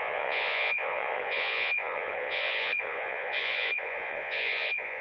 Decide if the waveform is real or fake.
fake